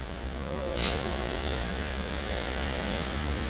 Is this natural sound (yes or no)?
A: no